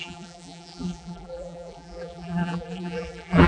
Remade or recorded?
remade